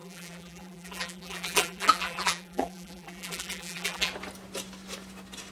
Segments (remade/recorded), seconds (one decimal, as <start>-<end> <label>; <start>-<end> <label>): 0.0-4.1 remade; 4.1-5.5 recorded